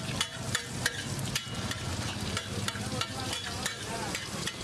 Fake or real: real